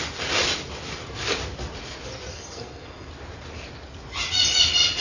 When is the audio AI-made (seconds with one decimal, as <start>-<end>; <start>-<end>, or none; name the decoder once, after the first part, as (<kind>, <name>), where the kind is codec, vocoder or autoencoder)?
2.3-3.1 (codec, SNAC)